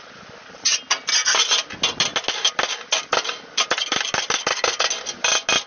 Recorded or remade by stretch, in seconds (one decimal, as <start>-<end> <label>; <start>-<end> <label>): 0.0-5.7 recorded